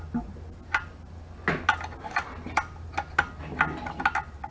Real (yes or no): yes